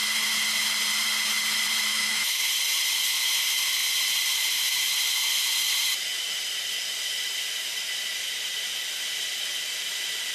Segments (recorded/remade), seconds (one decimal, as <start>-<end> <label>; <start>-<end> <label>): 0.0-1.9 recorded; 1.9-2.4 remade; 2.4-10.3 recorded